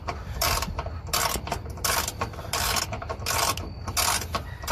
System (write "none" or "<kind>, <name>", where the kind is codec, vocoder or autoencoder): none